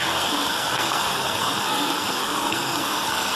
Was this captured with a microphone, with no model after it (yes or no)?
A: no